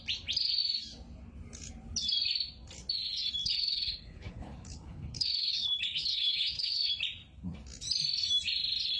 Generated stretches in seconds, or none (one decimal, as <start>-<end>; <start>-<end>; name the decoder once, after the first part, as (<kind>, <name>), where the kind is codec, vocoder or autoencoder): 3.4-6.9 (codec, HILCodec)

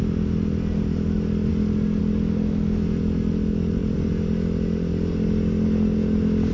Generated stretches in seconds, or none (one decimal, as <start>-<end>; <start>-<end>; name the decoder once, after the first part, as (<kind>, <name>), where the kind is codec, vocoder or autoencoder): none

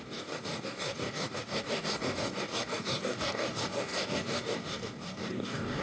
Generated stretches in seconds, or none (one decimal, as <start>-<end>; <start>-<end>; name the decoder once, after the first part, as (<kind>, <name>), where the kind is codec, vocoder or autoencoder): 0.0-5.8 (codec, DAC)

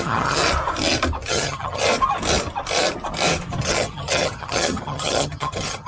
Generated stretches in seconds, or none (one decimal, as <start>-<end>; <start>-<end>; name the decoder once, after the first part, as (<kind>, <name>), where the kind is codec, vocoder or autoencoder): 0.0-0.4 (vocoder, HiFi-GAN); 1.3-1.8; 3.7-5.9

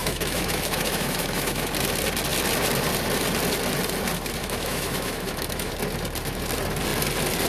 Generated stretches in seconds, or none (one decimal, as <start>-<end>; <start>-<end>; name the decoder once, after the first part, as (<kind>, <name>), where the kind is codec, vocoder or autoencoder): 0.0-1.7 (autoencoder, DAC-VAE); 4.4-5.7

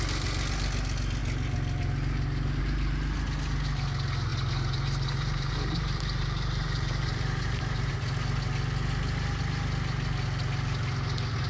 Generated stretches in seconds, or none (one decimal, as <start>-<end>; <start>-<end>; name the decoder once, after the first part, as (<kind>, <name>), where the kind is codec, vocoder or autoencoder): 4.3-7.9 (vocoder, BigVGAN v2)

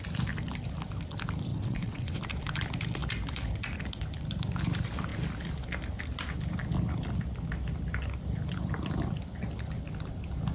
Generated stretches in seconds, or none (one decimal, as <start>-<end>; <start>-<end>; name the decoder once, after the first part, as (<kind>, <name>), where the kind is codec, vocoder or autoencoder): 1.5-2.2 (vocoder, WaveNeXt)

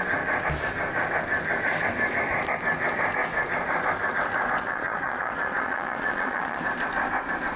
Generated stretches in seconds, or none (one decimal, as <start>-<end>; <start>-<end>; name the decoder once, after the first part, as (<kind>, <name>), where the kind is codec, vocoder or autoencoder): 4.6-6.6 (vocoder, Vocos)